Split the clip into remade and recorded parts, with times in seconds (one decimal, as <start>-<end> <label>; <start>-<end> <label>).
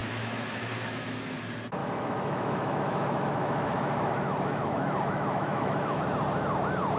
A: 0.0-1.2 remade; 1.2-1.8 recorded; 1.8-6.0 remade; 6.0-7.0 recorded